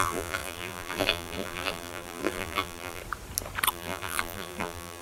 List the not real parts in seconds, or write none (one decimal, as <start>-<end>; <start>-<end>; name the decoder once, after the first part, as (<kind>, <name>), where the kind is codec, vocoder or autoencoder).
0.0-3.0 (vocoder, BigVGAN v2); 3.7-5.0